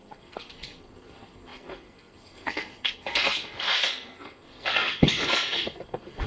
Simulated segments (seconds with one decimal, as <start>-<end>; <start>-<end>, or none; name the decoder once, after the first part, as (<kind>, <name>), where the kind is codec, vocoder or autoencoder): 0.0-6.3 (codec, SNAC)